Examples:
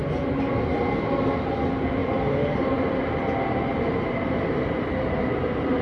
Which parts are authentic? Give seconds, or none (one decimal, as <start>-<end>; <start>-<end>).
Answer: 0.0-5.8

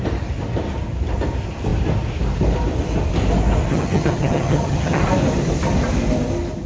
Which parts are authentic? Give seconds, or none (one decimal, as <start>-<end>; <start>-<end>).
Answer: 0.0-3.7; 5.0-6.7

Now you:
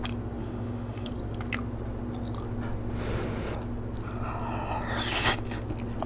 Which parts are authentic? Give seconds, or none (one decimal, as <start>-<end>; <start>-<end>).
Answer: 0.0-0.4; 1.1-6.1

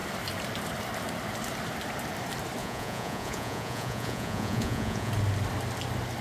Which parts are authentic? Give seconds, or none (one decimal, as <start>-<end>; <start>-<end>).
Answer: 0.0-2.6; 5.1-6.2

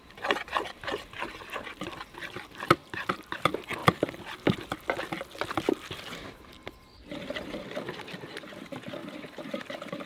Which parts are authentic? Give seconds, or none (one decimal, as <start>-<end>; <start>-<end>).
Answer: 0.0-2.8; 3.3-9.0; 9.6-10.1